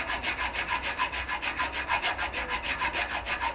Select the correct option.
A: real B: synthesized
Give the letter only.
A